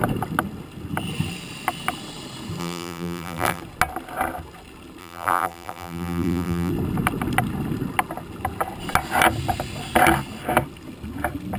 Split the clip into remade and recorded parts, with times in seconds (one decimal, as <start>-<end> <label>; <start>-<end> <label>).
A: 0.0-2.6 recorded; 2.6-3.6 remade; 3.6-5.0 recorded; 5.0-6.7 remade; 6.7-11.6 recorded